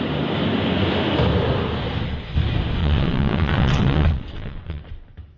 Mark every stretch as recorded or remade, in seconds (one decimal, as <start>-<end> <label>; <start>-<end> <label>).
0.0-2.8 recorded; 2.8-4.8 remade; 4.8-5.4 recorded